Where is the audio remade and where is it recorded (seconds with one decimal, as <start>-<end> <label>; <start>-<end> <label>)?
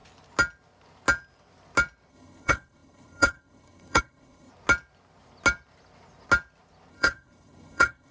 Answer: 0.0-2.1 recorded; 2.1-4.5 remade; 4.5-6.9 recorded; 6.9-8.1 remade